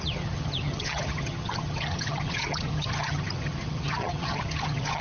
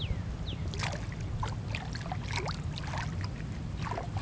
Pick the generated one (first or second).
first